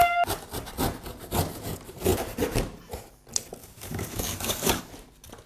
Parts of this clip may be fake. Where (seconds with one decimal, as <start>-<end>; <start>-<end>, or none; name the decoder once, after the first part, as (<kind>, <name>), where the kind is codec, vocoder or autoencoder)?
3.6-4.8 (codec, DAC)